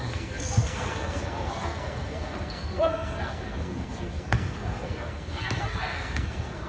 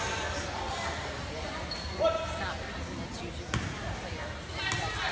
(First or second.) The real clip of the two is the second